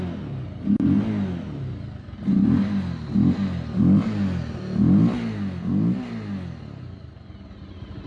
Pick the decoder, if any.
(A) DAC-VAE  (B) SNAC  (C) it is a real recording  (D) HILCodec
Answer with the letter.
C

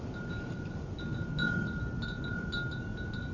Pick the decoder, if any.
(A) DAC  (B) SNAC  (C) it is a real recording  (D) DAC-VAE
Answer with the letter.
C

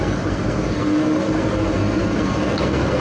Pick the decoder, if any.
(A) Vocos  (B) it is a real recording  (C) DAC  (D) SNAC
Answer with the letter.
D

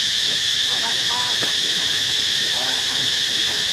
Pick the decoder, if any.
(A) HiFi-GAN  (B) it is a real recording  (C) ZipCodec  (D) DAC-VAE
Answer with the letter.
D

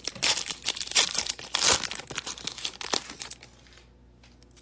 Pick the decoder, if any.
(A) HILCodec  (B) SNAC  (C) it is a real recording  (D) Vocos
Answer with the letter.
C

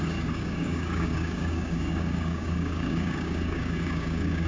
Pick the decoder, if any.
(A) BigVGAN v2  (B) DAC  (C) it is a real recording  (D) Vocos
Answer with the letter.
B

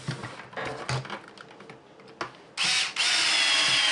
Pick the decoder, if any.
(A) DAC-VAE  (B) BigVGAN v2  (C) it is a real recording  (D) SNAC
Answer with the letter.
C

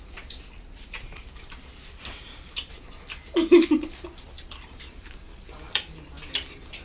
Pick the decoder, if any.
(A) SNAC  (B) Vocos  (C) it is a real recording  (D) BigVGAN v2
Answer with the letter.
C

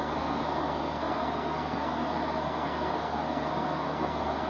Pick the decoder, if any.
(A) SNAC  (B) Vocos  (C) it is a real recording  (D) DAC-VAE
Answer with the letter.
A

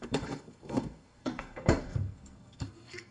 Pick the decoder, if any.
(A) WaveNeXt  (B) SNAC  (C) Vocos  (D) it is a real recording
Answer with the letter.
B